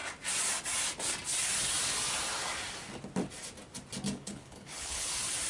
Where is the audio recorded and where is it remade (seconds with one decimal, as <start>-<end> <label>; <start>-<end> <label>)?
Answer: 0.0-4.2 recorded; 4.2-5.1 remade; 5.1-5.5 recorded